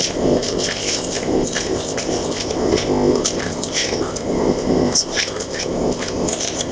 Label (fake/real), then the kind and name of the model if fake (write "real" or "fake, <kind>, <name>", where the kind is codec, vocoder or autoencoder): fake, codec, ZipCodec